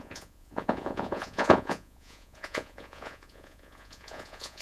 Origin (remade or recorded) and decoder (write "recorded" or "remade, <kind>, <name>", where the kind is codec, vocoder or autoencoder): remade, vocoder, Vocos